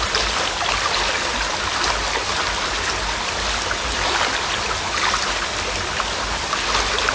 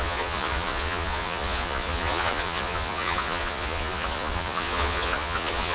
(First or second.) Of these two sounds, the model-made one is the second